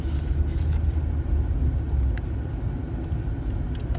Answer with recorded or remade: recorded